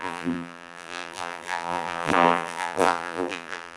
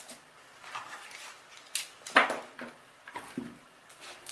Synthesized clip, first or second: first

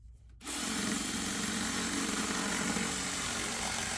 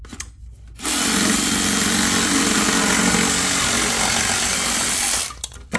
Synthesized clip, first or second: first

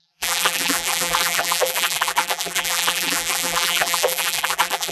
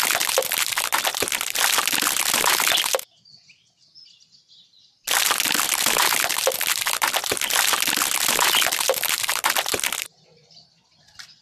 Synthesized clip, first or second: first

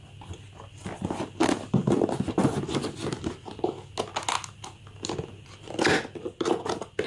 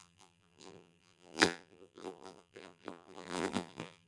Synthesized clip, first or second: second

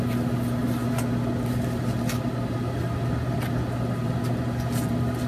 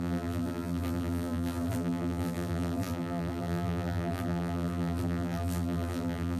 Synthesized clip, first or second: second